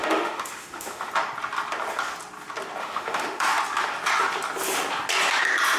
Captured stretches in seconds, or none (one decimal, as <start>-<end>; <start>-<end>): 1.1-2.8; 3.5-5.8